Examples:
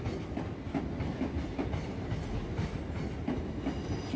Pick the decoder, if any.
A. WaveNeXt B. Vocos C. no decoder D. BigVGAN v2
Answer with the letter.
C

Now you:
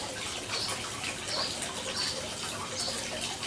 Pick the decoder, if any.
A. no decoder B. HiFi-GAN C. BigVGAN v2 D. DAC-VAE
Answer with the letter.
A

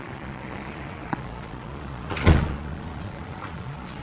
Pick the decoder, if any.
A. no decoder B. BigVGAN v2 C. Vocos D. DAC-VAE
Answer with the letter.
C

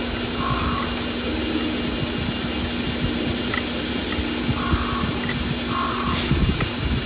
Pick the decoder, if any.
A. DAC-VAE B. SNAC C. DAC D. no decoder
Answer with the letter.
D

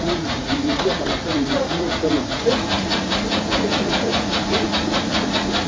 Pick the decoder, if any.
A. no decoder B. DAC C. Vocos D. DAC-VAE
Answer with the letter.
C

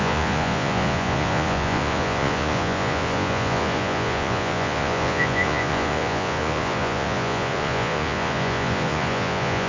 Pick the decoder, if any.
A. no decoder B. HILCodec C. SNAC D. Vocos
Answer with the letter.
D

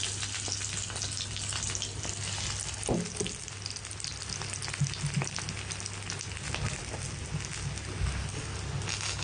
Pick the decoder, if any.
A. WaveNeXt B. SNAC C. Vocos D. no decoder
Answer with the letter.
D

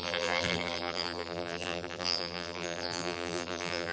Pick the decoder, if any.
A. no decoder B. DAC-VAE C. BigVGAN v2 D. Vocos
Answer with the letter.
C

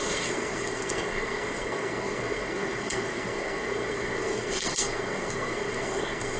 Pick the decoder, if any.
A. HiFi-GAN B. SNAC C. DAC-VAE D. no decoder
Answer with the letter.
B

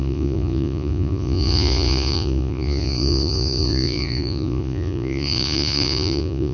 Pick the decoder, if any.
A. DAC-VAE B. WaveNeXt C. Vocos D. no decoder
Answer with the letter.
C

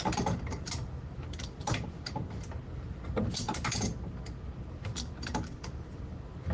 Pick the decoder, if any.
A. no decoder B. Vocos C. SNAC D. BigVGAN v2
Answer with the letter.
A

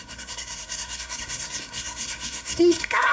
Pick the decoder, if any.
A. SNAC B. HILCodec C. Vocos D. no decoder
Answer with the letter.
A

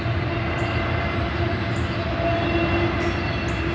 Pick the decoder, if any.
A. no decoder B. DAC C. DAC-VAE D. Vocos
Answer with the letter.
A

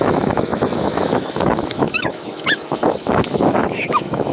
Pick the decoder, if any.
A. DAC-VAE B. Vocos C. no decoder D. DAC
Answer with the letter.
A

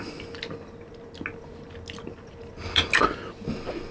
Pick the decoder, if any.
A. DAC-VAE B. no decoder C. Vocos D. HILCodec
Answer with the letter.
B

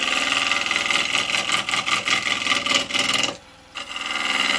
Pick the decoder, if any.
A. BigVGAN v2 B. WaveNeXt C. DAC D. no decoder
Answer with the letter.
D